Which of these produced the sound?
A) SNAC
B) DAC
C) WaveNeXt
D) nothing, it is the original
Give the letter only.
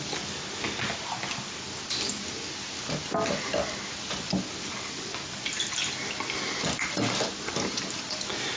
D